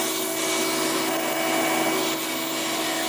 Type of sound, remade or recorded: recorded